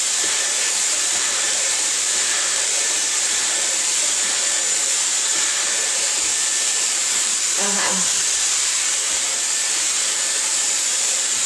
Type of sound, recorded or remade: remade